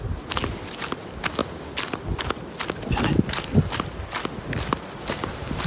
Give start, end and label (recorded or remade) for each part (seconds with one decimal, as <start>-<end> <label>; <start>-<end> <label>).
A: 0.0-5.7 recorded